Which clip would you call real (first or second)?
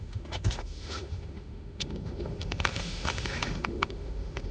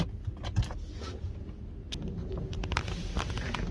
second